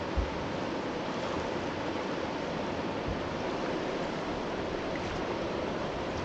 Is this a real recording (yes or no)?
yes